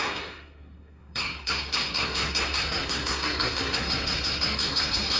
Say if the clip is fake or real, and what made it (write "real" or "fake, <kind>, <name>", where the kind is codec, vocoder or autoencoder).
fake, codec, SNAC